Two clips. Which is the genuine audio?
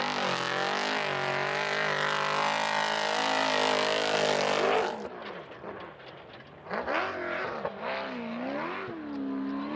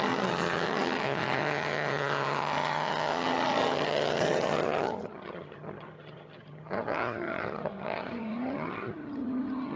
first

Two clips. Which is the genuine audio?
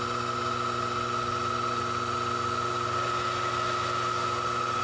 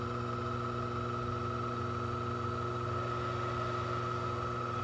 first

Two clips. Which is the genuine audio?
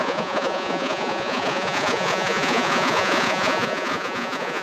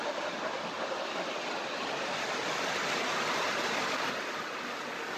second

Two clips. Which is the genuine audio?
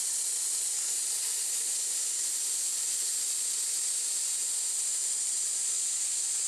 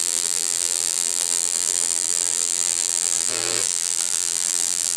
first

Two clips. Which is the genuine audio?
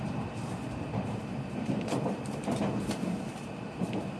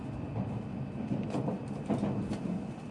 second